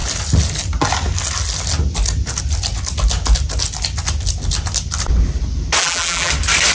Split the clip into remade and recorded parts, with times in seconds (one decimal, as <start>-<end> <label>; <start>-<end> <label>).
0.0-5.8 recorded; 5.8-6.3 remade; 6.3-6.7 recorded